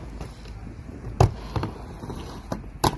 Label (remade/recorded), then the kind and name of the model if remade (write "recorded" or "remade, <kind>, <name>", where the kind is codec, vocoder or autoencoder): recorded